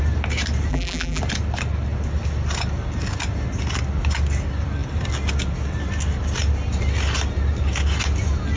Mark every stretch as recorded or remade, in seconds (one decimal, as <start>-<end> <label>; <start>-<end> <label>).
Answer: 0.0-0.7 recorded; 0.7-1.2 remade; 1.2-8.6 recorded